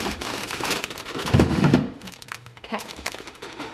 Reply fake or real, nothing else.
fake